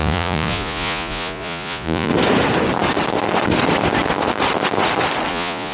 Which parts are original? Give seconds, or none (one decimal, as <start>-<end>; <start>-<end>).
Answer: 2.1-5.3